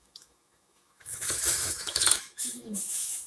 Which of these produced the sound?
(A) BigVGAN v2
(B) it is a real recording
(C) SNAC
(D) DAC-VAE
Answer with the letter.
D